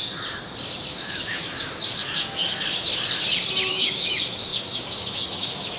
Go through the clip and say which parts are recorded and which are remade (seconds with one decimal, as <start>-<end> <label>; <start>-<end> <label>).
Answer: 0.0-0.9 recorded; 0.9-2.9 remade; 2.9-3.7 recorded; 3.7-5.8 remade